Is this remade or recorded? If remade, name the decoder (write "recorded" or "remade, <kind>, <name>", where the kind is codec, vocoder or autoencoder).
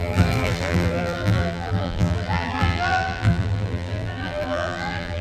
remade, vocoder, BigVGAN v2